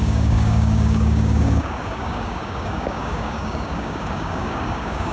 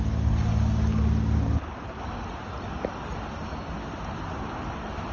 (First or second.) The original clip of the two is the second